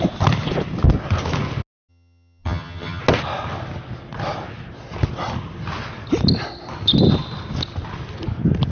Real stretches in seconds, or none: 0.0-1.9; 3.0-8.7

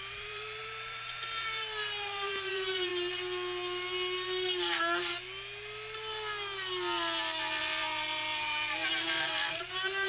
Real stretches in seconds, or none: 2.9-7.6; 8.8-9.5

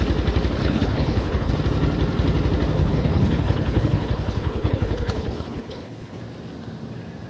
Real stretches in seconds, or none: 0.0-0.6; 1.5-2.8; 6.2-7.3